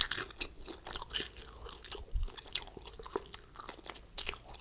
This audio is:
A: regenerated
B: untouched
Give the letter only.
B